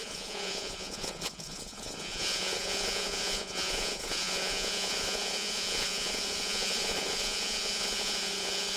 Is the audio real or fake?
fake